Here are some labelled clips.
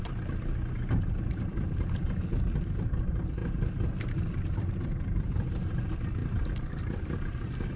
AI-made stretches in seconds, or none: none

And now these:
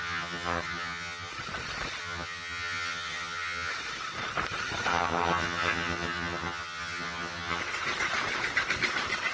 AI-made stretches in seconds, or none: 0.0-1.3 (vocoder, HiFi-GAN); 2.0-3.7; 4.9-7.6

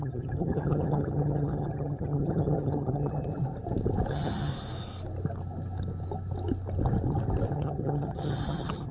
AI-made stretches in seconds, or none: 0.0-3.3 (vocoder, HiFi-GAN); 4.1-4.5; 7.5-8.9

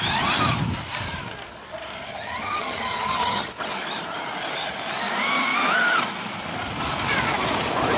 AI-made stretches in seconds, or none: 2.1-3.5 (vocoder, HiFi-GAN)

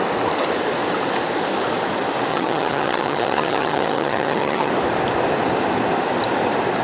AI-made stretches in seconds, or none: 2.3-4.7 (vocoder, HiFi-GAN)

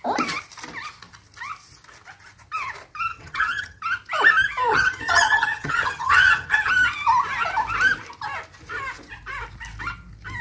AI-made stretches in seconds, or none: 3.1-3.8 (vocoder, HiFi-GAN); 4.7-6.7

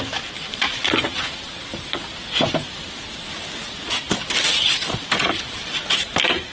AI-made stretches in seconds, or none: none

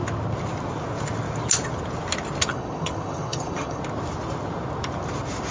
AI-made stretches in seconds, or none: 2.5-3.8 (vocoder, HiFi-GAN)